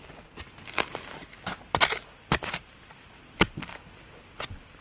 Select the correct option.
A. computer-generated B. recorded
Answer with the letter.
B